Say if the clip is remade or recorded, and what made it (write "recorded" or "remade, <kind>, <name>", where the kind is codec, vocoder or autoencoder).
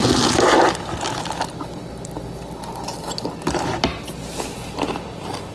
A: recorded